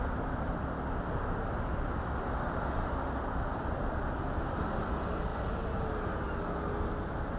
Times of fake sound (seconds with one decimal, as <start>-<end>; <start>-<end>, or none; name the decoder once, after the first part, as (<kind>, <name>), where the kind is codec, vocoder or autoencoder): none

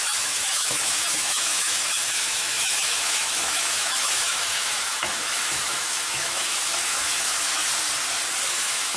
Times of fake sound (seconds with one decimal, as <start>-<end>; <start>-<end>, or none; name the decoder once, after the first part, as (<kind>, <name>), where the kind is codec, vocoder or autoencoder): 0.0-7.6 (autoencoder, DAC-VAE); 8.5-9.0

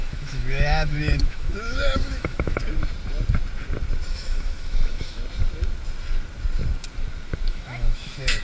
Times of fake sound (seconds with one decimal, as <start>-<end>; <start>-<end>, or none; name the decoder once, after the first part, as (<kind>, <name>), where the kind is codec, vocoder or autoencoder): 0.0-2.6 (autoencoder, DAC-VAE); 4.1-5.2; 7.5-8.4

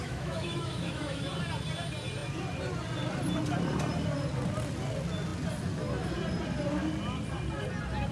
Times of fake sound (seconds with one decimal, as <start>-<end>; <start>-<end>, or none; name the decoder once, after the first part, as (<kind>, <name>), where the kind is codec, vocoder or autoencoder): 0.0-1.3 (autoencoder, DAC-VAE)